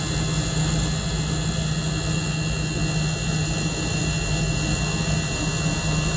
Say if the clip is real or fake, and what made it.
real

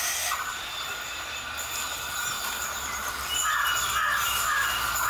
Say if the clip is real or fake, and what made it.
real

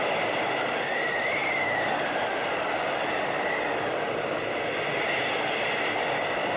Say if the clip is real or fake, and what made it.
real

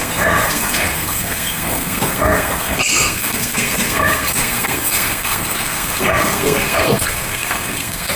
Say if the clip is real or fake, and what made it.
fake, codec, SNAC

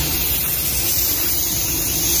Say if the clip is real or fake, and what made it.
real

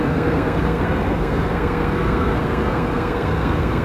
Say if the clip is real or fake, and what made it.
fake, codec, SNAC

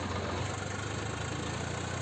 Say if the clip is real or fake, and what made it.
real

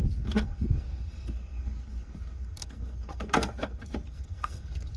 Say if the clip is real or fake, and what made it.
fake, codec, SNAC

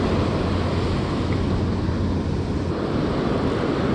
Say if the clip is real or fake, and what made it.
real